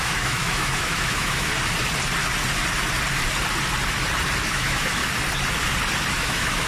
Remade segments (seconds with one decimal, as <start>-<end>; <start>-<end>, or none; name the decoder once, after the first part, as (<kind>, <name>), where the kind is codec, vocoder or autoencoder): 0.0-1.5 (autoencoder, DAC-VAE); 4.5-5.0; 6.1-6.7